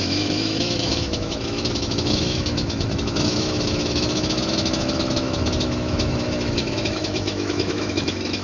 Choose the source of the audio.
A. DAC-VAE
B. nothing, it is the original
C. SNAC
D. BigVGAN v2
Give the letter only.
A